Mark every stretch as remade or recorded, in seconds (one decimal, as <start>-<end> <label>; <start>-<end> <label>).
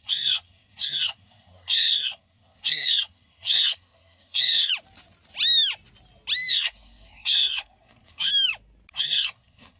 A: 0.0-4.7 remade; 4.7-6.5 recorded; 6.5-8.3 remade; 8.3-8.9 recorded; 8.9-9.8 remade